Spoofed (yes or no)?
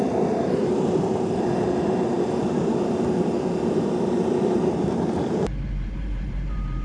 yes